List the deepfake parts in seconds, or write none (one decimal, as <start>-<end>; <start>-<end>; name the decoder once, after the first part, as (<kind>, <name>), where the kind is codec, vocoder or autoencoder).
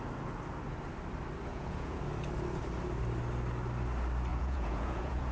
1.5-2.0 (vocoder, Vocos); 4.3-5.3